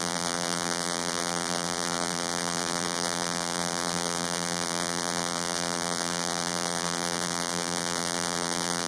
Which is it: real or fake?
fake